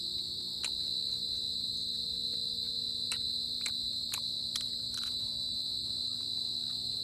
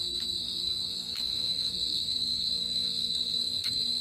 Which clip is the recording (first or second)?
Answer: first